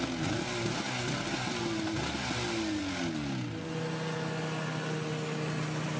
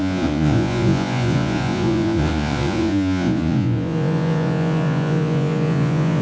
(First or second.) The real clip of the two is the first